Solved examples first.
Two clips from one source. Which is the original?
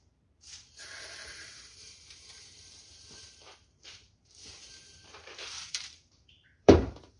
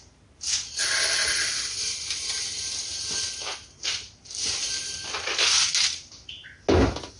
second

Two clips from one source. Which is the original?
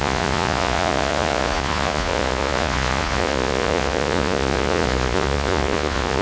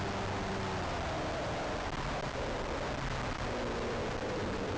second